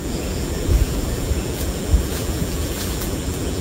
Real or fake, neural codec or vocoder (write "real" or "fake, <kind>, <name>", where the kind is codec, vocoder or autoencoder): fake, vocoder, BigVGAN v2